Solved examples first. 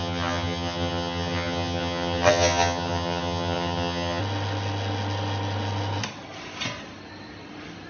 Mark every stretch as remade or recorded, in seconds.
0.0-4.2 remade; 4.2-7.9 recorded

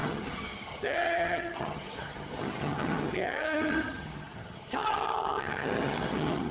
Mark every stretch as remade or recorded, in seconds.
0.0-6.5 remade

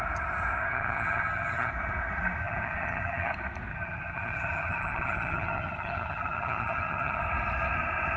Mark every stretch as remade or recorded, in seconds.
0.0-0.7 recorded; 0.7-1.7 remade; 1.7-2.4 recorded; 2.4-3.3 remade; 3.3-3.7 recorded; 3.7-7.2 remade; 7.2-8.2 recorded

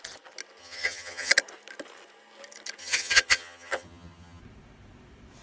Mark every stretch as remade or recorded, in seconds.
0.0-0.6 recorded; 0.6-1.3 remade; 1.3-2.8 recorded; 2.8-4.4 remade; 4.4-5.4 recorded

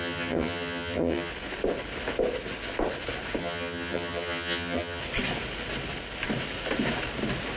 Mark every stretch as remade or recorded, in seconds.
0.0-1.3 remade; 1.3-3.4 recorded; 3.4-5.0 remade; 5.0-7.6 recorded